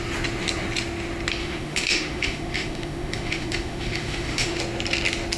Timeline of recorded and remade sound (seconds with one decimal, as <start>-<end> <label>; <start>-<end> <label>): 0.0-1.4 recorded; 1.4-4.6 remade; 4.6-5.4 recorded